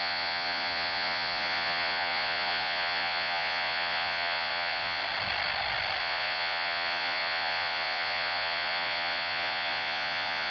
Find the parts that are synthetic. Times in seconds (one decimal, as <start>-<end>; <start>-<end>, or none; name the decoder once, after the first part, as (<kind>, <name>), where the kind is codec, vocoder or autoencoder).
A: 0.0-5.0 (vocoder, Vocos); 6.0-10.5